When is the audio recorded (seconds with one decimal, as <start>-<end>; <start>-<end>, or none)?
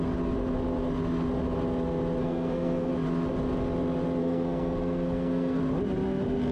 0.0-2.2; 2.9-4.2; 5.6-6.5